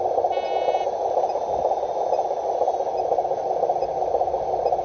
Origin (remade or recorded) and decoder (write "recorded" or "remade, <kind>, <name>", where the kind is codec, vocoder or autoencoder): recorded